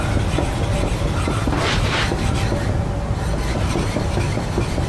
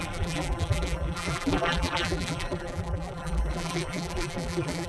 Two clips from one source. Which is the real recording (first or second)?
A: first